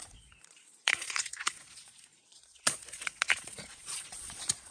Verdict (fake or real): fake